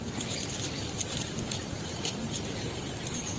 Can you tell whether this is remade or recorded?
recorded